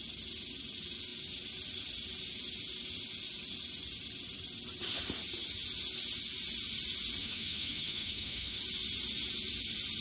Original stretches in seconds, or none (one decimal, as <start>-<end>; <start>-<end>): 0.0-7.2; 8.6-10.0